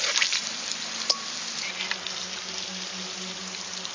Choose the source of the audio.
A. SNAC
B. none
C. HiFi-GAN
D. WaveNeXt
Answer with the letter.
B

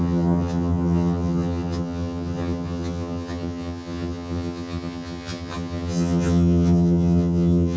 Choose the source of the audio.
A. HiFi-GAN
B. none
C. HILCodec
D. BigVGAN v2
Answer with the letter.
A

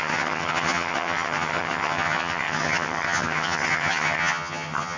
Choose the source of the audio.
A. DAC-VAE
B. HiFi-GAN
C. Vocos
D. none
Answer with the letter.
B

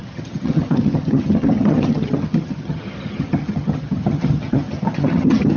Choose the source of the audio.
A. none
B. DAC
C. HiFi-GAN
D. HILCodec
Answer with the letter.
C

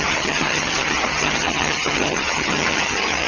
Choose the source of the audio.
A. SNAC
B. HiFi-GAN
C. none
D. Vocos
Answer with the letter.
B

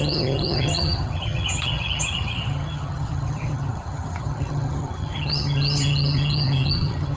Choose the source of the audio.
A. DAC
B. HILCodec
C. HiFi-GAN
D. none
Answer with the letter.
C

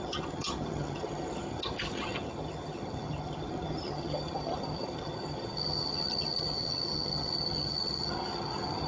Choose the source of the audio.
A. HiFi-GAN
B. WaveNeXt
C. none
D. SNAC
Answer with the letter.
A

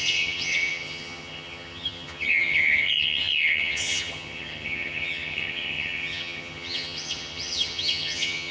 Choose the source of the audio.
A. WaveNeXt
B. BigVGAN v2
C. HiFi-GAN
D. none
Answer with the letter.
C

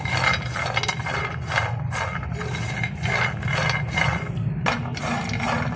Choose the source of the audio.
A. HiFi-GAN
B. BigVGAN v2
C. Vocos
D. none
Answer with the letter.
D